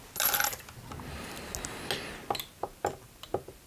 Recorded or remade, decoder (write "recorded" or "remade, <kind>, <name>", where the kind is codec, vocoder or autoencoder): recorded